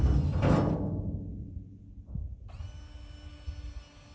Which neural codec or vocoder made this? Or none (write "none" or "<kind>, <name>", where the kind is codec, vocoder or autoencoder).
none